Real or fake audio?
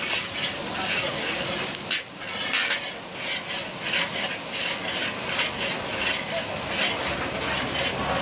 real